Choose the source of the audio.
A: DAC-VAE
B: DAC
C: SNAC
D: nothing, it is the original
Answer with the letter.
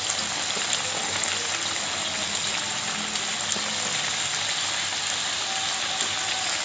D